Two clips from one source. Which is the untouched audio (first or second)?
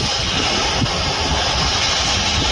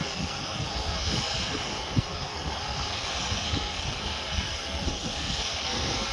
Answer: first